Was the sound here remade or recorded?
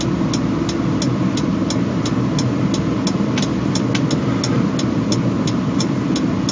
recorded